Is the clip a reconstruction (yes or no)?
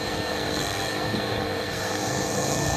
yes